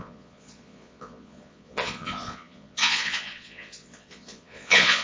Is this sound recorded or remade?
remade